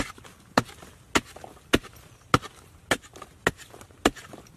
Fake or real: real